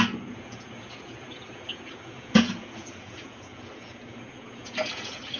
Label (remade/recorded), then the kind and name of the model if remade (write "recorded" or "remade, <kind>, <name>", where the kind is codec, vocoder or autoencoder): remade, vocoder, Vocos